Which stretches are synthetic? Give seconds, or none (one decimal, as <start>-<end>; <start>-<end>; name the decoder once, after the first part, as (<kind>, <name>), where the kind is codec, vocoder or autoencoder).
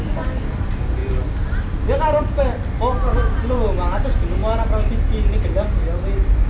none